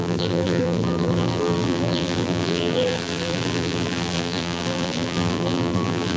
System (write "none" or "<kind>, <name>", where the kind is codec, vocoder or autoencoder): vocoder, BigVGAN v2